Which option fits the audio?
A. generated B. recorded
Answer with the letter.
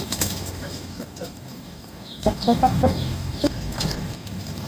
A